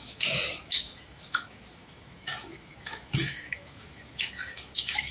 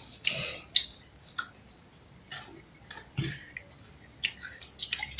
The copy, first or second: first